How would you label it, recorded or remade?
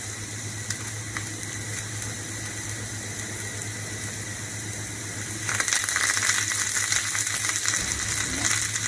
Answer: recorded